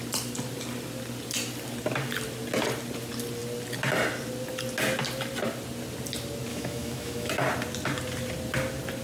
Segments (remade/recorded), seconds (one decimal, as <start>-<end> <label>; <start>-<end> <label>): 0.0-6.5 recorded; 6.5-7.3 remade; 7.3-9.0 recorded